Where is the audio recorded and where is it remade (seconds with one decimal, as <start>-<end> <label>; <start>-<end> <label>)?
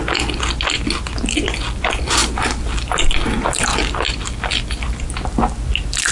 0.0-6.1 recorded